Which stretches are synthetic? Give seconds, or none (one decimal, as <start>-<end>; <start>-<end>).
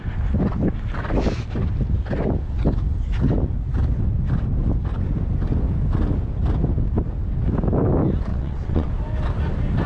8.3-8.9